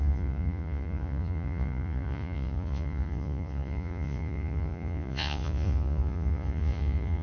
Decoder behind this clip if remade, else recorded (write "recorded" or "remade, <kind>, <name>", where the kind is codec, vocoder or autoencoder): remade, vocoder, Vocos